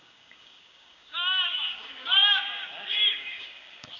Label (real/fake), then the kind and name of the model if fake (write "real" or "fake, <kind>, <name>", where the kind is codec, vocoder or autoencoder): fake, codec, DAC